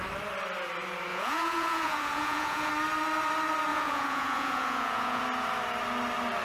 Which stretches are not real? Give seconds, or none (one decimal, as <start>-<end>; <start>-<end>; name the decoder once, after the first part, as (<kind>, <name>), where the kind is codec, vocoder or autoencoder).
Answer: 1.1-2.7 (vocoder, Vocos); 3.7-5.2